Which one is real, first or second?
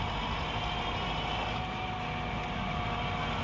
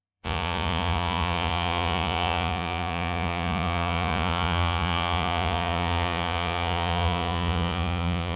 first